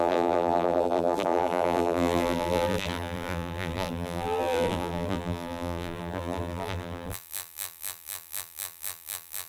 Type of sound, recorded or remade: remade